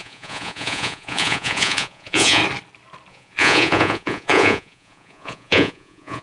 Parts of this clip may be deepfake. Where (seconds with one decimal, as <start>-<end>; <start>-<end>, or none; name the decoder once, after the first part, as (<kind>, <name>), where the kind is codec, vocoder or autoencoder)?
0.0-2.4 (vocoder, Vocos); 3.1-6.2

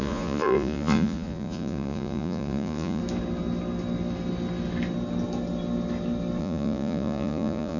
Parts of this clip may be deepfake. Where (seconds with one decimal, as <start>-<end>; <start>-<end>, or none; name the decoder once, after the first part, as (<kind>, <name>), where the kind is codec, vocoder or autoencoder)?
0.0-3.0 (vocoder, Vocos); 6.4-7.8